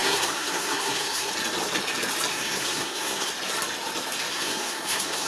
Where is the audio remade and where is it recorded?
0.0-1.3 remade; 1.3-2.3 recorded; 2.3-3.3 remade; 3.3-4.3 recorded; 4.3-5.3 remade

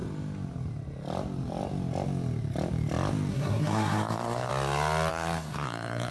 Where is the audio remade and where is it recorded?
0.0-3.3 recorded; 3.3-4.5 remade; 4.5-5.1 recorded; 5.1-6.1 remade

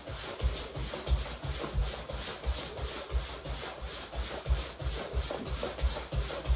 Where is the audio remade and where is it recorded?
0.0-6.6 recorded

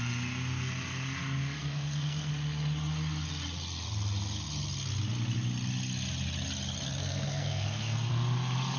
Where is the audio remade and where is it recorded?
0.0-1.6 recorded; 1.6-2.3 remade; 2.3-7.0 recorded; 7.0-8.1 remade; 8.1-8.8 recorded

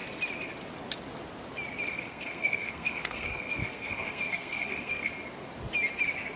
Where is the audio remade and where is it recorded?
0.0-1.9 recorded; 1.9-5.1 remade; 5.1-6.4 recorded